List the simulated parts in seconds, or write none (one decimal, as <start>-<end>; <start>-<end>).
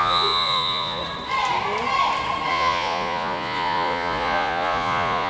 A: 0.0-1.0; 2.5-5.3